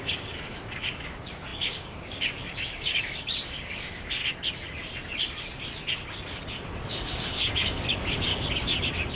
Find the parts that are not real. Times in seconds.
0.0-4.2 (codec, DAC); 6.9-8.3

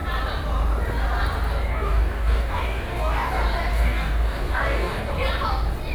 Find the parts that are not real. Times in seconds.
1.7-3.3 (codec, DAC); 3.7-5.1

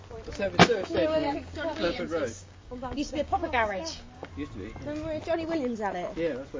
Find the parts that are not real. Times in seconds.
0.6-4.3 (codec, DAC)

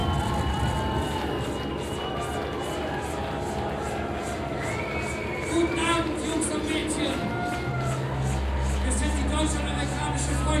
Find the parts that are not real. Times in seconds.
none